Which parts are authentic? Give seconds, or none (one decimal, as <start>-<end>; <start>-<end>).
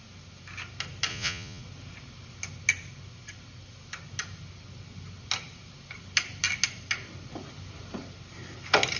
0.0-1.1; 1.6-9.0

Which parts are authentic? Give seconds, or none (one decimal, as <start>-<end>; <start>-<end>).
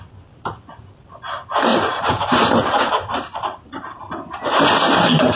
0.0-1.7; 4.0-5.4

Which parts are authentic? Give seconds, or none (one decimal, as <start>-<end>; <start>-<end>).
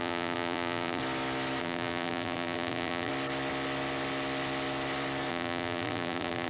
1.0-1.6; 3.1-5.3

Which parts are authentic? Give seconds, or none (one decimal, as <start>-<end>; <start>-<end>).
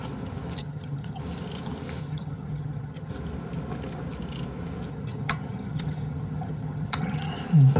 0.0-0.6; 1.2-2.0; 3.1-4.9; 7.3-7.8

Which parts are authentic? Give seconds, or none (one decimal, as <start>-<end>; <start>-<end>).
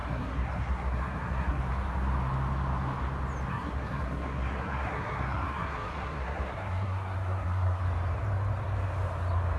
1.6-3.5; 7.8-9.6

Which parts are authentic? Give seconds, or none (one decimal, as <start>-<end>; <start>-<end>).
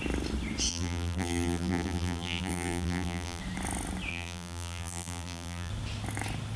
0.0-0.7; 3.4-4.1; 5.7-6.6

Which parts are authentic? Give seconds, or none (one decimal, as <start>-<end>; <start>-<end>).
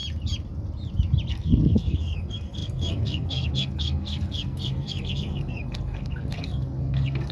0.0-1.3